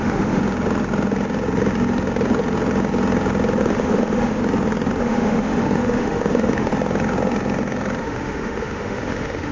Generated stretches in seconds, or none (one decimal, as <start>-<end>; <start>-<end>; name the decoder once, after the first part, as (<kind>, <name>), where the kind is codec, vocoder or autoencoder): 0.0-0.4 (autoencoder, DAC-VAE); 3.6-4.4; 5.0-6.7; 8.0-9.5